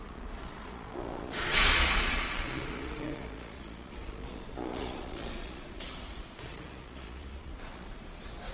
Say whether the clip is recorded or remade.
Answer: remade